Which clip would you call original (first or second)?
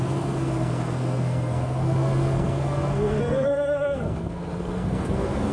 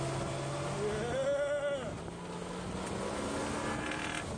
second